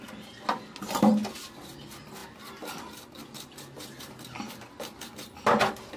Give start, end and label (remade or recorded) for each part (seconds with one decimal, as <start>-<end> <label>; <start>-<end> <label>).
0.0-6.0 recorded